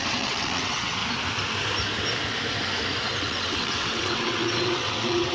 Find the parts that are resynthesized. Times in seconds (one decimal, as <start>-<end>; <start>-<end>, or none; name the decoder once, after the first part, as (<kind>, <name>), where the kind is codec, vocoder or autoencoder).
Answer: 0.0-1.0 (vocoder, WaveNeXt); 3.2-5.3